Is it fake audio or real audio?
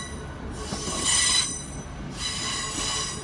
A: real